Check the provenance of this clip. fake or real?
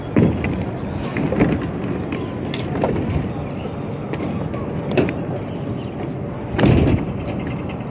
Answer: real